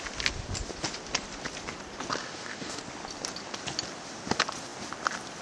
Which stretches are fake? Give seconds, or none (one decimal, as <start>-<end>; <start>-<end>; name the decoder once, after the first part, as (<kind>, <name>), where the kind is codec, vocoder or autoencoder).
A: 2.2-2.8 (autoencoder, DAC-VAE)